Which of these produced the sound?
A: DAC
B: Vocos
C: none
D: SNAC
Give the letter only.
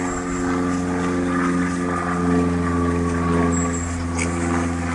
C